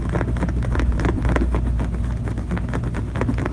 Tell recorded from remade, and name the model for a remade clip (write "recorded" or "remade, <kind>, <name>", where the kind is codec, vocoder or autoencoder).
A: recorded